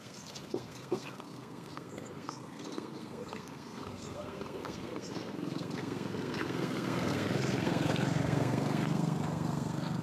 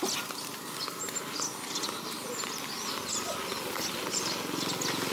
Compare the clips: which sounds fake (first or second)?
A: first